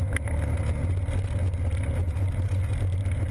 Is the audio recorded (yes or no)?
yes